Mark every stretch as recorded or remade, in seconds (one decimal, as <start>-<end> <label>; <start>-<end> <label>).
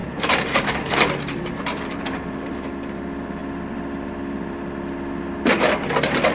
0.0-2.7 remade; 2.7-6.3 recorded